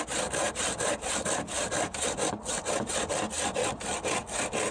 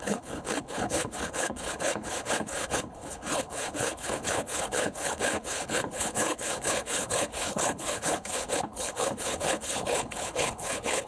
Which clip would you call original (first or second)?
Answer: first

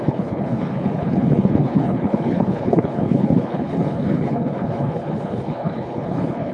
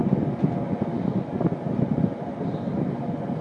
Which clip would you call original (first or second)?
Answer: second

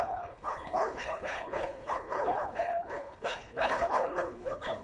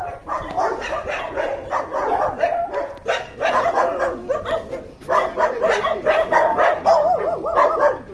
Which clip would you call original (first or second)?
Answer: second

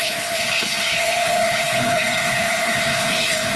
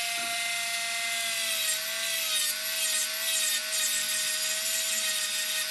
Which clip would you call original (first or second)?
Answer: second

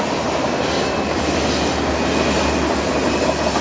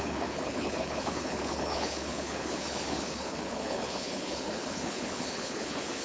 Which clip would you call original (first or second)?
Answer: first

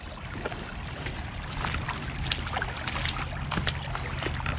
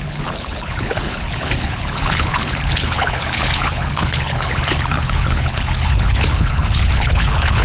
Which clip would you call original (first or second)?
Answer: first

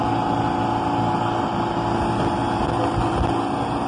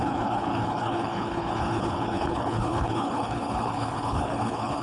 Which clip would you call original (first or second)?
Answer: first